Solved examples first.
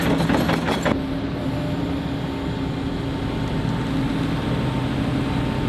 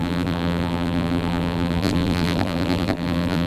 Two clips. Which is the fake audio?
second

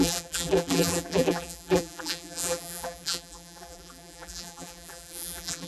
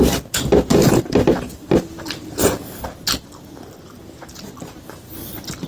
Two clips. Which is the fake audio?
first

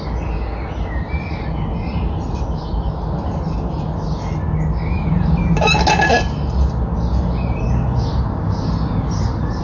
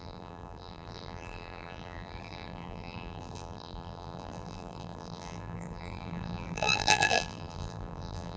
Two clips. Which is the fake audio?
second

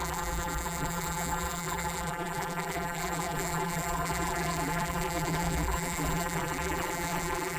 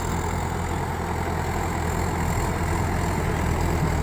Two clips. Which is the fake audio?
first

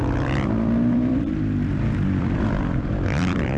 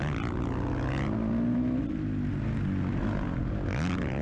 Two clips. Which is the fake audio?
first